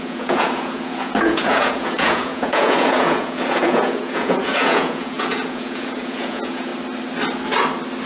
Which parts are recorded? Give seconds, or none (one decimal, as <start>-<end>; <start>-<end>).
6.7-8.1